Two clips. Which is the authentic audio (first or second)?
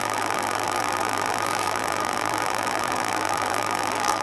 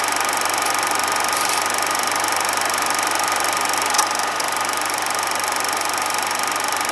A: second